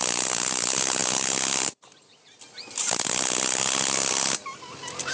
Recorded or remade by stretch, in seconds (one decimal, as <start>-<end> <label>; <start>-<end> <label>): 0.0-5.1 recorded